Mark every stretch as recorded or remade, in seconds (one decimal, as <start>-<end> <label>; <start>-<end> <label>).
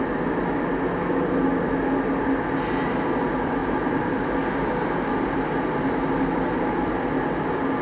0.0-7.8 recorded